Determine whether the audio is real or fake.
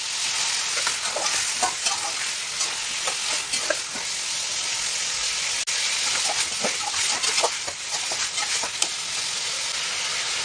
real